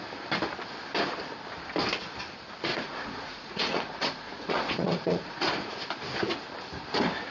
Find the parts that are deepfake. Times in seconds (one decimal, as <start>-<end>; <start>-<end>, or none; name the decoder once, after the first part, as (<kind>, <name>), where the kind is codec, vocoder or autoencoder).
2.7-5.7 (vocoder, Vocos)